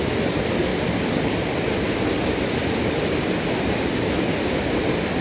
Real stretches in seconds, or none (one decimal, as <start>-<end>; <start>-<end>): 0.0-0.7; 1.5-2.6